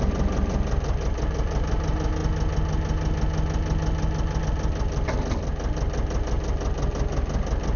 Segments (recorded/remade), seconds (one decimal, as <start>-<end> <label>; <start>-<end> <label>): 0.0-7.8 recorded